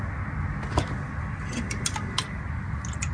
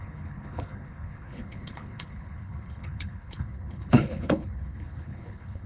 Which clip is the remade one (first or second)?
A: second